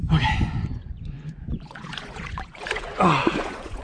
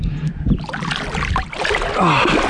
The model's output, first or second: first